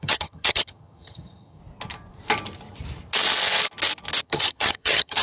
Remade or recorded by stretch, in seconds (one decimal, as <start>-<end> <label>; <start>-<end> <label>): 0.0-1.6 remade; 1.6-4.2 recorded; 4.2-5.2 remade